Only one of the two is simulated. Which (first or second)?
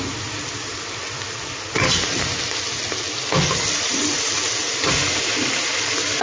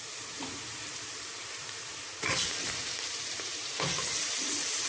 second